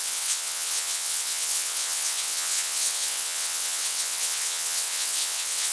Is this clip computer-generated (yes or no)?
yes